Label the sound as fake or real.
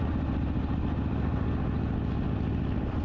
real